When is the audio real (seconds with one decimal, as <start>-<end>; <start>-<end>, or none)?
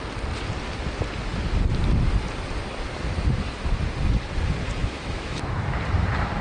0.0-4.8; 5.8-6.4